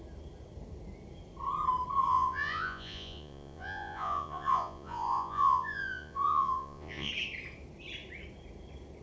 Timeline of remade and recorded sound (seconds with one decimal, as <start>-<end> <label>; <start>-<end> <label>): 0.0-2.1 recorded; 2.1-7.1 remade; 7.1-9.0 recorded